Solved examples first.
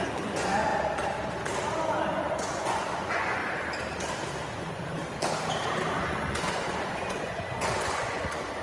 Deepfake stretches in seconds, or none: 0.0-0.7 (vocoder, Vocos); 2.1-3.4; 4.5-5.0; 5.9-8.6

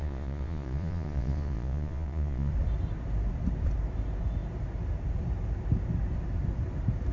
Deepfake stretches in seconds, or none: 0.0-2.5 (vocoder, Vocos)

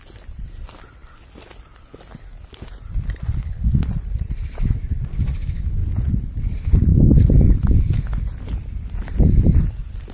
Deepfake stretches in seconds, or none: none

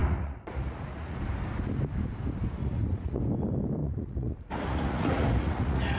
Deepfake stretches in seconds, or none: 0.0-1.2 (vocoder, Vocos); 2.6-3.2; 3.8-6.0